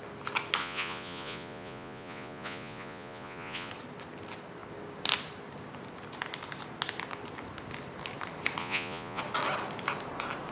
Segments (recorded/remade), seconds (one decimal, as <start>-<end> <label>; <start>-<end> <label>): 0.0-0.6 recorded; 0.6-3.7 remade; 3.7-8.6 recorded; 8.6-9.2 remade; 9.2-10.5 recorded